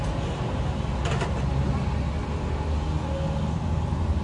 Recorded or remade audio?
recorded